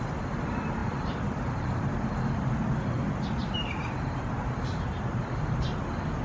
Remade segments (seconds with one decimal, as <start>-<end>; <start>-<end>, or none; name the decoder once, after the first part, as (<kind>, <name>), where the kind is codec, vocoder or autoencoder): 0.8-1.8 (vocoder, BigVGAN v2); 3.4-5.8